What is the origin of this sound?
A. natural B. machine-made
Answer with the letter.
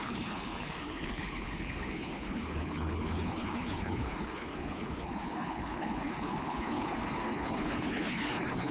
B